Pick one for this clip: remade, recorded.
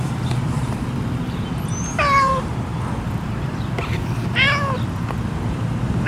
remade